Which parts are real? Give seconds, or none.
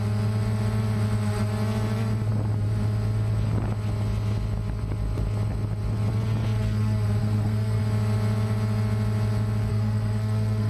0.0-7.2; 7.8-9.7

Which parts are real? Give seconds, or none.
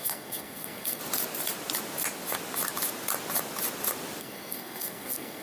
1.0-4.2